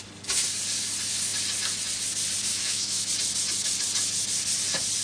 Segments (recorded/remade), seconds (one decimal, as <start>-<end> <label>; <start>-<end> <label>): 0.0-2.5 recorded; 2.5-3.1 remade; 3.1-5.0 recorded